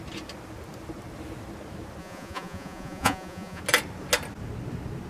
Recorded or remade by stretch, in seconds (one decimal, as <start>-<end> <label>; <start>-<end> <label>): 0.0-2.0 recorded; 2.0-3.6 remade; 3.6-5.1 recorded